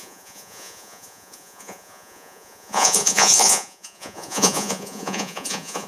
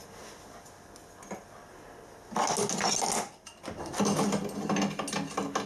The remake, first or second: first